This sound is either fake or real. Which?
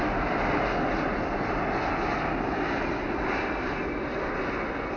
real